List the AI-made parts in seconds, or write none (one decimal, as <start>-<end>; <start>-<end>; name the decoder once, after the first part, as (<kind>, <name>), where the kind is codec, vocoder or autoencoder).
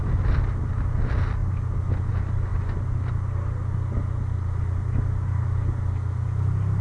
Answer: none